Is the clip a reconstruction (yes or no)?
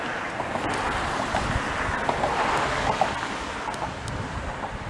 no